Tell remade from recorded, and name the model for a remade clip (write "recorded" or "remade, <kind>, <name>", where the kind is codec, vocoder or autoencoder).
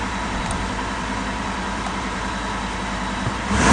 remade, vocoder, BigVGAN v2